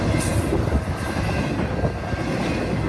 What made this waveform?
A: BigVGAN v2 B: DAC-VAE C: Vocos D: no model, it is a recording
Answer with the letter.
D